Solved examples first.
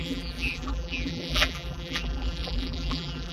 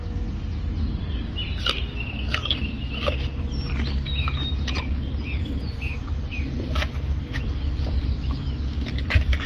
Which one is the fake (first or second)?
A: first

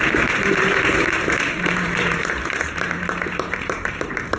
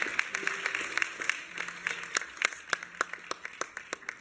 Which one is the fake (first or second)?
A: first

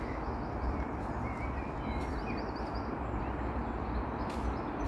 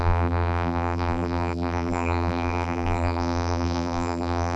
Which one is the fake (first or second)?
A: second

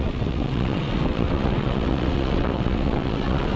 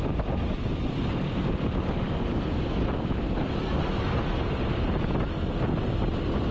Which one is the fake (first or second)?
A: first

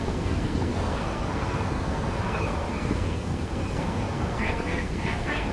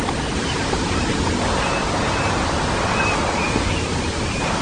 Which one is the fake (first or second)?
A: first